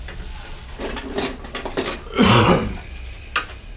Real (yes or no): yes